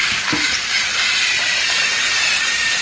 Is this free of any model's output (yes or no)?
yes